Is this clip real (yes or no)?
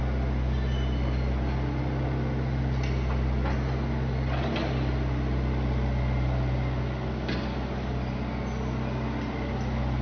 yes